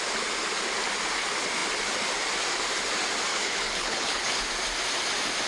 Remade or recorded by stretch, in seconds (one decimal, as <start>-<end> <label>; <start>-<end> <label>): 0.0-3.3 recorded; 3.3-4.4 remade; 4.4-5.5 recorded